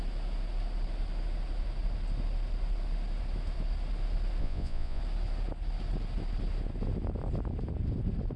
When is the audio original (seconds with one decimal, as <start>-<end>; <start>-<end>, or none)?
0.0-4.4; 5.0-8.4